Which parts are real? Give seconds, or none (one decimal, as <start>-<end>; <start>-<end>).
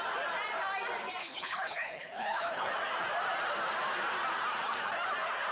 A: 0.0-1.2; 2.7-5.5